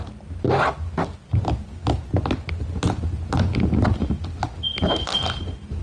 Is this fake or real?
real